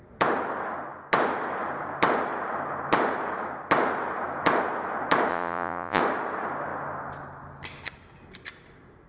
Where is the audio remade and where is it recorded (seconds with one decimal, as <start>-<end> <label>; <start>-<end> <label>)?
0.0-5.3 recorded; 5.3-6.0 remade; 6.0-9.1 recorded